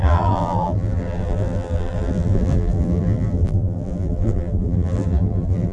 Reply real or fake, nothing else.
fake